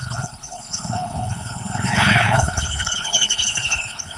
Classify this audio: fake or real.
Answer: fake